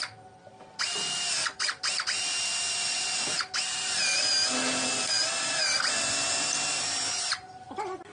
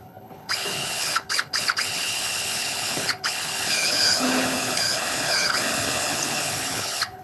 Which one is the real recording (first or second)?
first